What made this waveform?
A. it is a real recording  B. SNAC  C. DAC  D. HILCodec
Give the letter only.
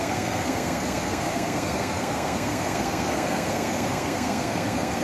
B